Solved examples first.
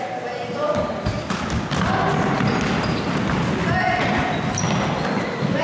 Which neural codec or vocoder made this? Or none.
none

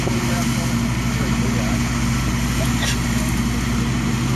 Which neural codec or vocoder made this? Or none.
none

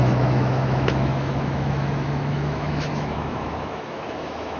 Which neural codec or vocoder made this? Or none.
autoencoder, DAC-VAE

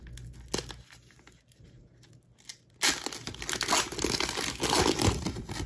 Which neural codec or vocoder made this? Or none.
none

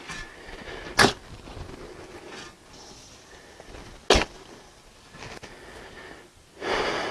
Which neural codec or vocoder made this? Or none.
none